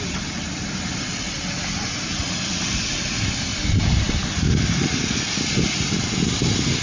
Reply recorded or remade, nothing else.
recorded